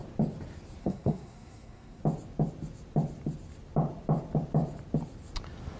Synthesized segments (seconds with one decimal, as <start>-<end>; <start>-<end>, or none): 0.8-2.0